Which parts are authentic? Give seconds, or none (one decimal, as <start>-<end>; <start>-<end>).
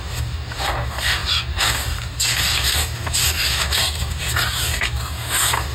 none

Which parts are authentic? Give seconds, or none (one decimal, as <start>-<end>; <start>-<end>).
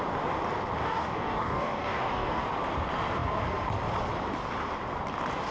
0.0-0.8; 2.4-5.5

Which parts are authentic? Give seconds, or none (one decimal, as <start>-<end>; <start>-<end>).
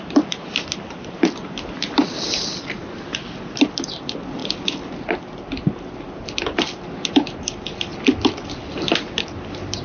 0.0-9.8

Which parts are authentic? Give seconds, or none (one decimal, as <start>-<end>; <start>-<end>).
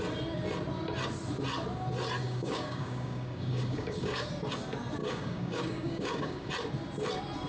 0.0-2.2; 4.2-5.0; 6.5-7.5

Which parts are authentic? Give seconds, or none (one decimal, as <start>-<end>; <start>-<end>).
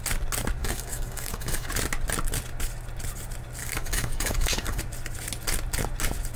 0.0-0.6; 1.7-3.6; 4.8-6.4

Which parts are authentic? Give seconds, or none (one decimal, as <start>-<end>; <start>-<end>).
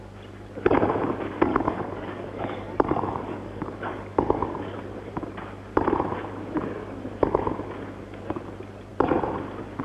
0.0-1.5; 4.8-9.8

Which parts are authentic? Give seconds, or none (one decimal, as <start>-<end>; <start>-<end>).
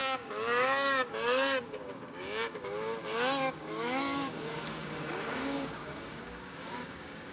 none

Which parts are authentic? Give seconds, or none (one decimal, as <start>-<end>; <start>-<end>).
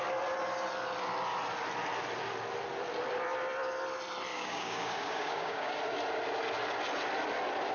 0.0-4.3; 5.8-7.7